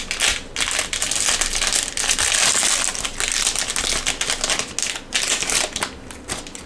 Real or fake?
real